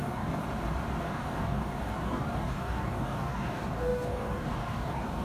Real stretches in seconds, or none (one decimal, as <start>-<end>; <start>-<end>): 0.4-1.0